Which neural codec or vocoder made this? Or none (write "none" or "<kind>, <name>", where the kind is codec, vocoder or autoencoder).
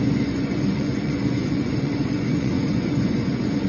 vocoder, Vocos